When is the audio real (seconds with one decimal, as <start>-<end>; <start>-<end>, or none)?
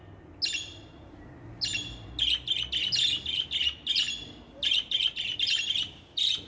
0.0-6.5